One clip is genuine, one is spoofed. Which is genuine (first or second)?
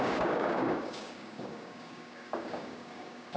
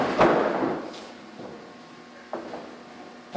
second